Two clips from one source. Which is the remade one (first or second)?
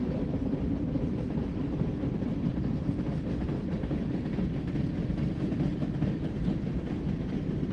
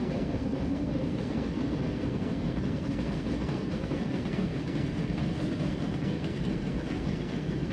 second